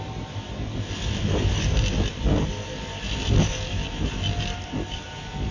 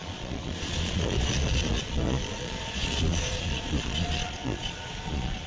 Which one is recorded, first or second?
first